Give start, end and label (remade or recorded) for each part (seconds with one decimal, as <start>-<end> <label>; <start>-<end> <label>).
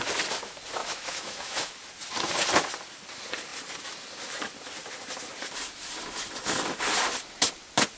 0.0-0.8 recorded; 0.8-1.7 remade; 1.7-8.0 recorded